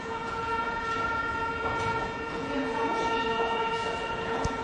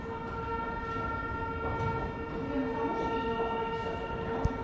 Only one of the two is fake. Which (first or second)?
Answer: first